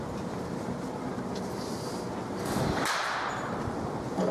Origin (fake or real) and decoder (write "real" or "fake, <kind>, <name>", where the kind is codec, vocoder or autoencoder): real